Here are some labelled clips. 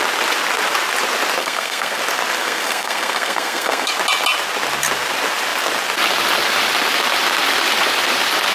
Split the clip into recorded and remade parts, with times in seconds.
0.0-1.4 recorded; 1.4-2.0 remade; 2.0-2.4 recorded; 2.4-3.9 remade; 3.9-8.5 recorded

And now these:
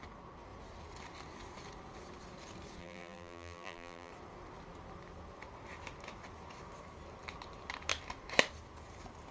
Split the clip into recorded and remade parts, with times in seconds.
0.0-2.8 recorded; 2.8-4.1 remade; 4.1-9.3 recorded

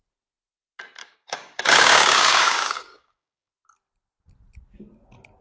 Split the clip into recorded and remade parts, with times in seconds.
0.0-1.0 recorded; 1.0-3.5 remade; 3.5-5.4 recorded